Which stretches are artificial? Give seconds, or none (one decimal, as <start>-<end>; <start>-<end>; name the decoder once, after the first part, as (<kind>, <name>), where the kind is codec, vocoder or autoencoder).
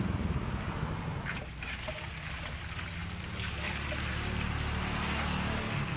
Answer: none